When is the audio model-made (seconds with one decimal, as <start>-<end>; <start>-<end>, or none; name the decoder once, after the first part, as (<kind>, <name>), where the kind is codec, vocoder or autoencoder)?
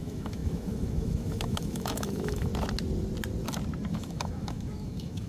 0.0-2.5 (autoencoder, DAC-VAE); 3.9-5.3